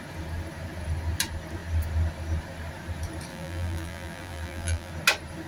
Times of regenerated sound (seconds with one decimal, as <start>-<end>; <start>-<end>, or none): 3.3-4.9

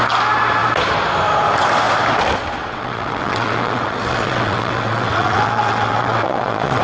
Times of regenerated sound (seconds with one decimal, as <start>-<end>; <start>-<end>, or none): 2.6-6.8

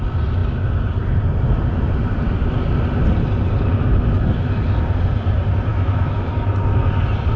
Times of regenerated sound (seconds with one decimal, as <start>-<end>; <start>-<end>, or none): 5.7-6.3

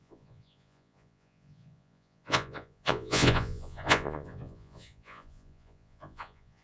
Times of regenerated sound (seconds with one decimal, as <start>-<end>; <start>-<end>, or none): 0.0-6.6